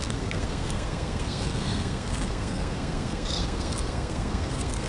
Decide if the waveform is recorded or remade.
remade